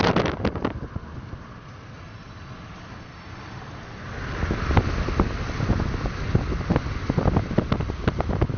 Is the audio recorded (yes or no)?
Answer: yes